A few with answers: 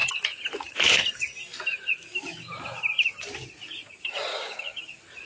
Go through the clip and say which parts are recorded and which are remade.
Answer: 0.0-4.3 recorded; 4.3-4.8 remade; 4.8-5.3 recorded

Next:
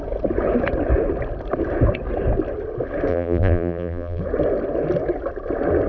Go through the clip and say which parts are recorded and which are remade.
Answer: 0.0-3.1 recorded; 3.1-4.2 remade; 4.2-5.9 recorded

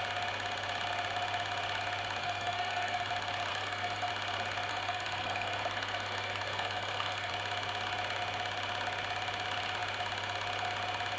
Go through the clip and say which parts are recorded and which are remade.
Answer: 0.0-2.2 recorded; 2.2-3.1 remade; 3.1-3.5 recorded; 3.5-4.1 remade; 4.1-4.7 recorded; 4.7-7.3 remade; 7.3-11.2 recorded

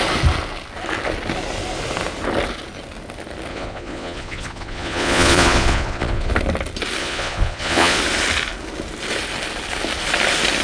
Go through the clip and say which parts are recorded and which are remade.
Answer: 0.0-3.5 recorded; 3.5-6.3 remade; 6.3-7.0 recorded; 7.0-8.0 remade; 8.0-10.6 recorded

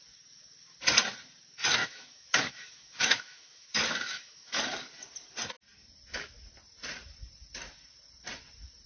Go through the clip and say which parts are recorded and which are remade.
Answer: 0.0-1.8 recorded; 1.8-4.6 remade; 4.6-8.9 recorded